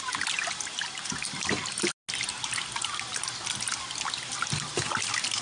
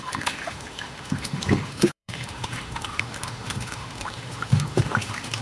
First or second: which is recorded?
first